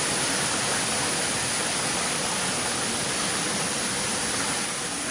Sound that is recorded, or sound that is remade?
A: recorded